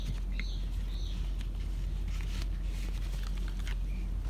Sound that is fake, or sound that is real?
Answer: real